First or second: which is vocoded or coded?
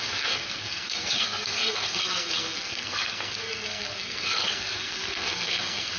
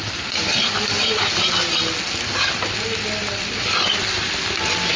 first